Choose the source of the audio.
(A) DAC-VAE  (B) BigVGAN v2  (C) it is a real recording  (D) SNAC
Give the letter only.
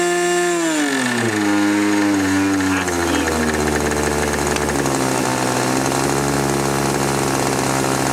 C